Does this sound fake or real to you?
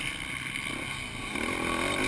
real